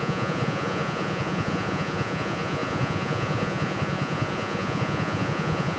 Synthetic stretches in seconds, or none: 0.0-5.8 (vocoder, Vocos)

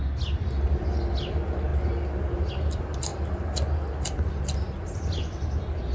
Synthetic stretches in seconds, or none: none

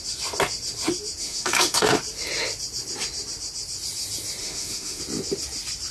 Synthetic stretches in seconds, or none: 1.2-2.0 (autoencoder, DAC-VAE); 4.4-5.0